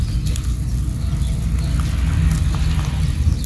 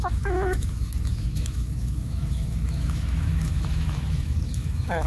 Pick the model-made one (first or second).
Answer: second